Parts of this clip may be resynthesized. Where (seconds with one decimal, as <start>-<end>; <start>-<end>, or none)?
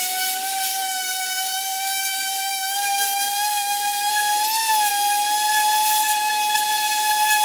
0.7-4.1